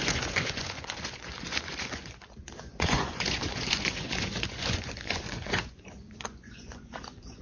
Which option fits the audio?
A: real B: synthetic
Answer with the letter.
B